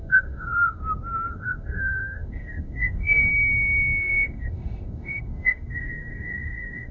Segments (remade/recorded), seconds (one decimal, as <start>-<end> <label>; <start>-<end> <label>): 0.0-0.8 remade; 0.8-1.3 recorded; 1.3-3.3 remade; 3.3-4.0 recorded; 4.0-6.9 remade